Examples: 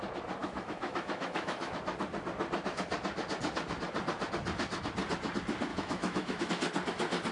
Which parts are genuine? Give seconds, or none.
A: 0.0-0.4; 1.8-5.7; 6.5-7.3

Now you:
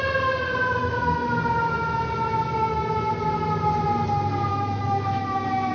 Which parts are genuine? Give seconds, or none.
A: 0.0-0.8; 1.4-2.6; 3.1-4.5